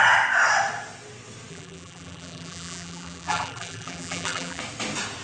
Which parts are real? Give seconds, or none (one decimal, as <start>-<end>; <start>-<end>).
0.0-1.5; 4.6-5.2

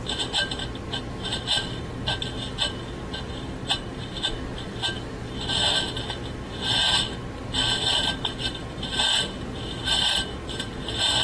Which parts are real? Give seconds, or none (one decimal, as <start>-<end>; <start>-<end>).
0.0-3.6; 4.3-11.2

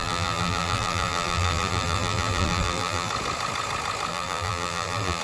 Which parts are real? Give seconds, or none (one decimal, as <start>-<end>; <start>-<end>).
3.1-4.1

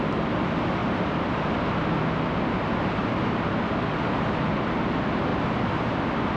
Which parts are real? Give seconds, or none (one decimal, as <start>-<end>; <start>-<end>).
0.8-4.4; 5.3-6.4

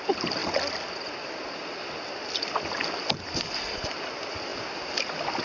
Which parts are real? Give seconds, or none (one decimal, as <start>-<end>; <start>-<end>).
0.0-5.4